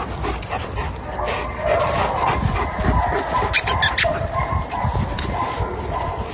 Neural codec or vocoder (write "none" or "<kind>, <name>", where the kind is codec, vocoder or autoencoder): none